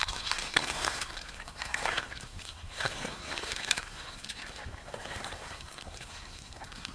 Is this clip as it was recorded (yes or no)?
no